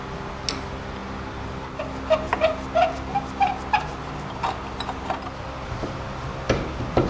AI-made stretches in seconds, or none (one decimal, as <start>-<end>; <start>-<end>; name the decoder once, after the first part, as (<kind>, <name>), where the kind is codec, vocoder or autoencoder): none